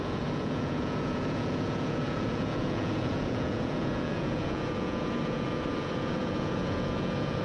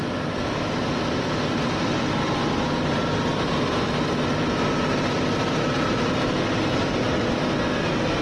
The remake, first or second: first